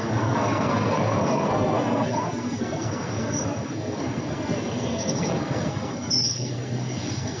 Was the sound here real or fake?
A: fake